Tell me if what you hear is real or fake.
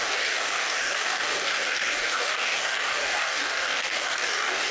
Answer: fake